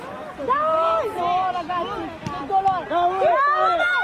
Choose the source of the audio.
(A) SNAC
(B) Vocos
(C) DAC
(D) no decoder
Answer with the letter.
D